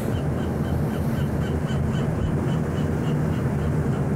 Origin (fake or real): real